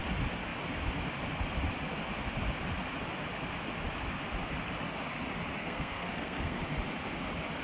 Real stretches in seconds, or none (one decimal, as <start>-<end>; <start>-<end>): 0.0-5.6; 6.6-7.6